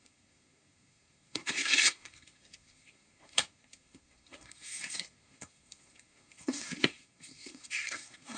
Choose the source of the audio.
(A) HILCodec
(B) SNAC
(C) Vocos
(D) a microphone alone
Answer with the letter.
B